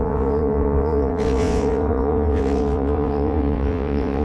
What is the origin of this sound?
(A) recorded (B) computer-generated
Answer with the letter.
B